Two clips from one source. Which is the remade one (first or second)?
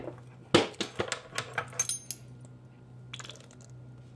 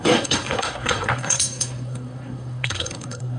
second